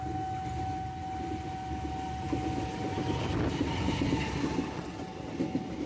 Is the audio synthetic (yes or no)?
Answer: no